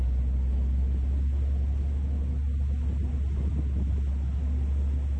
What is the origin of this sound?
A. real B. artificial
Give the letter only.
A